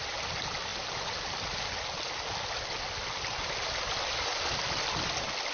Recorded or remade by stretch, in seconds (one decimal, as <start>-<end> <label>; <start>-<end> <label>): 0.0-5.5 recorded